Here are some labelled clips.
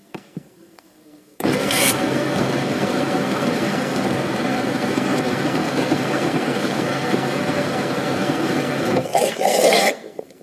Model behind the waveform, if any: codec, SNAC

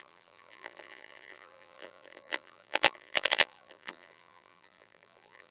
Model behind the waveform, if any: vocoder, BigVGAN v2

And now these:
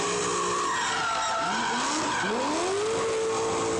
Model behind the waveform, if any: none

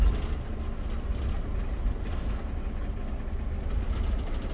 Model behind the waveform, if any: none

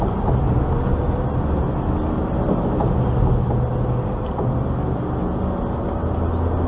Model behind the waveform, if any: none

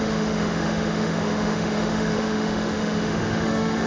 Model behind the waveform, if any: autoencoder, DAC-VAE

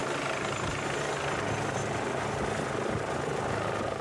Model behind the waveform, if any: none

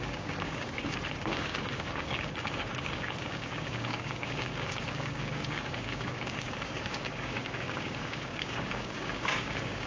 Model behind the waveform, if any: codec, DAC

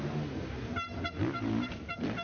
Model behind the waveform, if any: none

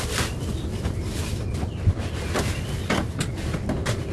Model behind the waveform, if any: vocoder, BigVGAN v2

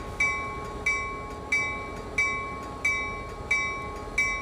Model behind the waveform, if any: none